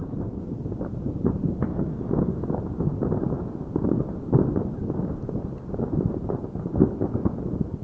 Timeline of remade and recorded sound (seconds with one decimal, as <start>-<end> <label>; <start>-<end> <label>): 0.0-1.7 recorded; 1.7-2.3 remade; 2.3-7.8 recorded